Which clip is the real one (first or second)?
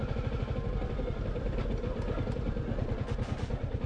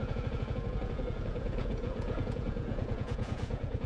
first